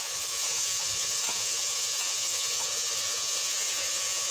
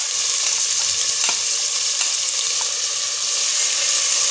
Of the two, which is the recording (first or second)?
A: second